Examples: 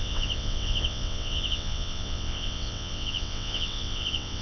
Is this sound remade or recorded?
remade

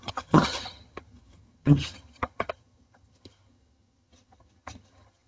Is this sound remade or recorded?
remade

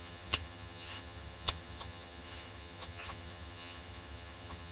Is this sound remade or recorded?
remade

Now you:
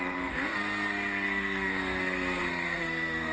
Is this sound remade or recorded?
remade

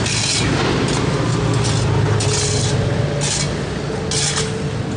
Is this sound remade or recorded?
recorded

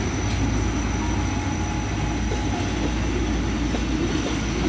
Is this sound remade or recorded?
recorded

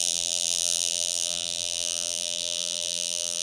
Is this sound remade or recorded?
remade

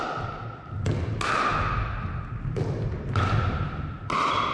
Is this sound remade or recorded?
recorded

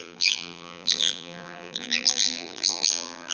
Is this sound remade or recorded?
remade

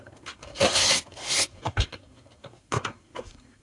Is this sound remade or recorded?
remade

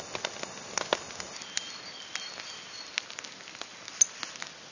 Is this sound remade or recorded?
recorded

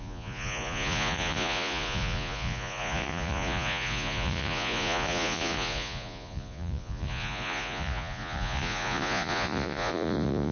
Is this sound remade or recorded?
remade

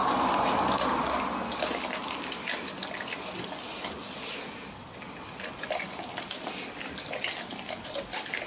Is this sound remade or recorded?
recorded